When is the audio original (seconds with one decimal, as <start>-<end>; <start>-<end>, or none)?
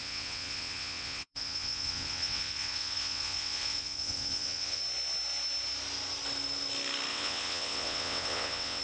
4.8-7.1